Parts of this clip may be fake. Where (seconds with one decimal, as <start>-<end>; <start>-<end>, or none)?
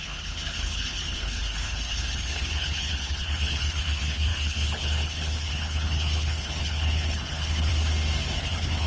0.0-7.7; 8.4-8.9